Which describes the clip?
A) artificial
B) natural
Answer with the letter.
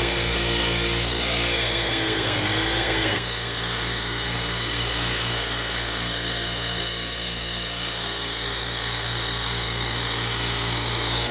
A